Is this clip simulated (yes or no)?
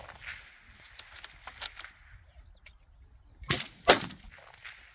no